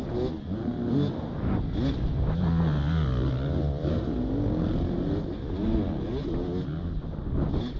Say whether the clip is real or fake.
real